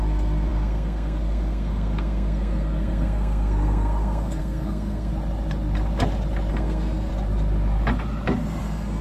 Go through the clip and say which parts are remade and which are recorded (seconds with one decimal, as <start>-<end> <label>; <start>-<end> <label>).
0.0-5.1 remade; 5.1-6.5 recorded; 6.5-7.1 remade; 7.1-8.6 recorded; 8.6-9.0 remade